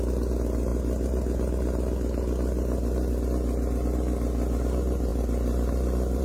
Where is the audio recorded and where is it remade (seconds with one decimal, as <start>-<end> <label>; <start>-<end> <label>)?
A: 0.0-6.2 recorded